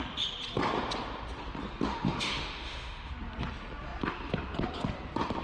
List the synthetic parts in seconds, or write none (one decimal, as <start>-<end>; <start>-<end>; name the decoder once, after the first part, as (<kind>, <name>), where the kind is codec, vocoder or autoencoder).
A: 1.9-3.1 (autoencoder, DAC-VAE)